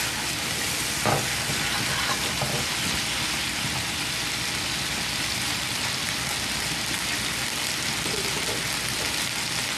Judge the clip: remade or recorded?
recorded